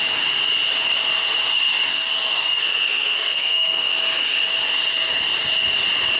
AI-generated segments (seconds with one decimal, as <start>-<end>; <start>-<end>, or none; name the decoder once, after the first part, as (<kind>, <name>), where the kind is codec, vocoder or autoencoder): 1.9-3.9 (codec, SNAC)